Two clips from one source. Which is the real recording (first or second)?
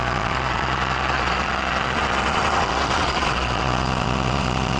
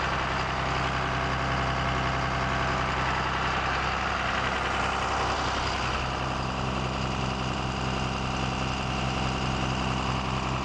second